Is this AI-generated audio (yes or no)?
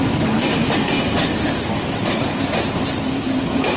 yes